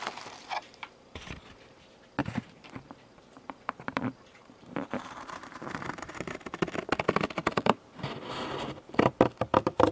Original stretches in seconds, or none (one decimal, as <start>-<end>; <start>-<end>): 0.0-2.2; 6.4-9.9